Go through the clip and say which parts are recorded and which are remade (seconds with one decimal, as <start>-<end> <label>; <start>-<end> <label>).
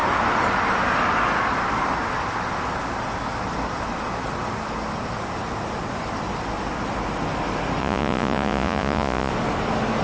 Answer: 0.0-7.8 recorded; 7.8-9.3 remade; 9.3-10.0 recorded